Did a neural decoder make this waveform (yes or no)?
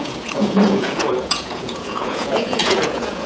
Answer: yes